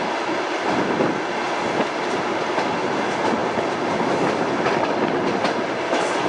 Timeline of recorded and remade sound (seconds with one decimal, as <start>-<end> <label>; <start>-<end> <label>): 0.0-6.3 recorded